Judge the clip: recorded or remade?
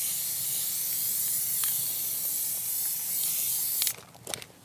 recorded